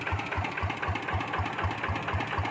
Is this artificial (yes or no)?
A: no